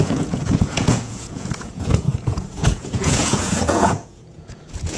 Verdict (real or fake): fake